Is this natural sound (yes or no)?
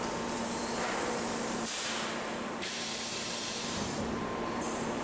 no